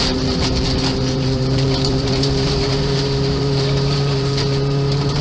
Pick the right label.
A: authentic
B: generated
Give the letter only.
B